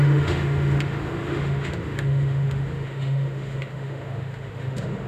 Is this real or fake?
fake